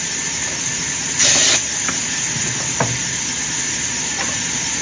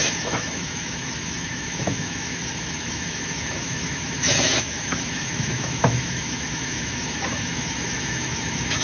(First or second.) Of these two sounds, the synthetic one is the second